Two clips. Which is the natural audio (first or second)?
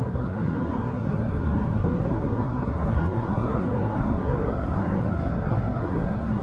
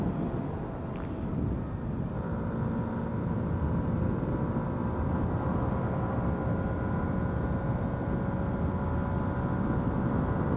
second